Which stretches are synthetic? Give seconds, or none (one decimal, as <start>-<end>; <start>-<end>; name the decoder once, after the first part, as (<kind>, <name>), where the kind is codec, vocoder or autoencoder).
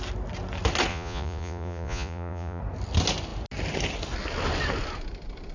0.9-2.6 (vocoder, Vocos)